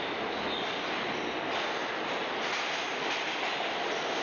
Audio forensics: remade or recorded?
recorded